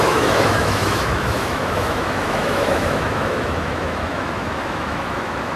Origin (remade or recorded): remade